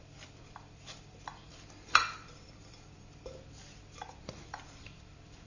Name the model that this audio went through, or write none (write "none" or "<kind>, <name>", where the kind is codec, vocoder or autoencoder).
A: vocoder, BigVGAN v2